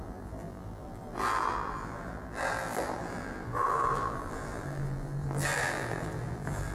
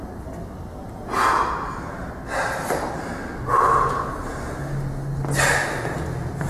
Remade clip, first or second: first